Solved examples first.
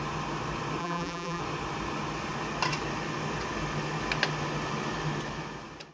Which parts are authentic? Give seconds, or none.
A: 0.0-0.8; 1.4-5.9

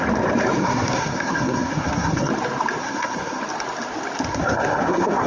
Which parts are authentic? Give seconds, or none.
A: 0.0-0.6; 2.3-2.8; 3.4-4.3

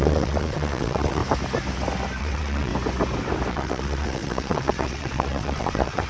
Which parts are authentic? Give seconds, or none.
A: 1.2-2.2; 2.7-3.5

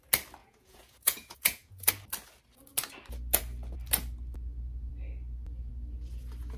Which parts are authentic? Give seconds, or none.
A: 0.0-0.4; 1.9-6.6

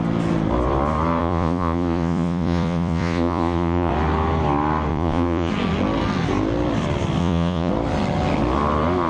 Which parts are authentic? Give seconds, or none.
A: 0.0-1.2; 3.9-4.9; 5.5-7.2; 7.7-9.1

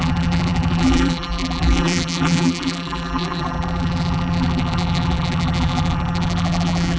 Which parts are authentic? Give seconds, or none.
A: none

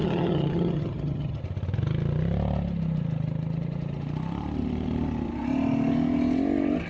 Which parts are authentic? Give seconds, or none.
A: 1.4-6.9

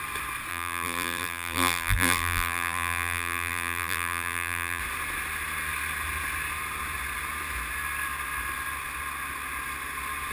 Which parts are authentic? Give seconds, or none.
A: 0.0-0.5; 4.8-10.3